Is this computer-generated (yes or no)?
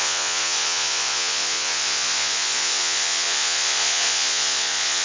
yes